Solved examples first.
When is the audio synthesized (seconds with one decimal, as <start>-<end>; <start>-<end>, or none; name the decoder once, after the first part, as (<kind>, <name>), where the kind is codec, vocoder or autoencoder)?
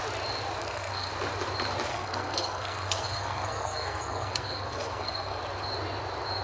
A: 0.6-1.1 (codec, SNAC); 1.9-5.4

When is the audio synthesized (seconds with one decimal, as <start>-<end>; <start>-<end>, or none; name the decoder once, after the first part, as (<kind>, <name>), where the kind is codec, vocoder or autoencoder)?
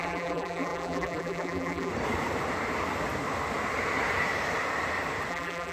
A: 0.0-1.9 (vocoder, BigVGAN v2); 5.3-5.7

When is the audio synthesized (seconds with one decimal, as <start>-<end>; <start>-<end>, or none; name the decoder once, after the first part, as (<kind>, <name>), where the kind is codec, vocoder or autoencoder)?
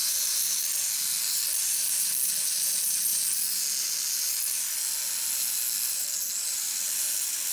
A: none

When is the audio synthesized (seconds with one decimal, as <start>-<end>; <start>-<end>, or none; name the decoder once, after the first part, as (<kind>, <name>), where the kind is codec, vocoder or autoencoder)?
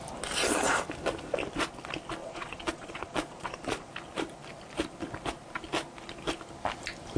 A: 2.2-3.9 (vocoder, Vocos)